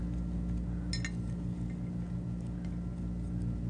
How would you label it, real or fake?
real